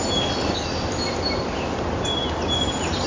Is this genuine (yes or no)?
yes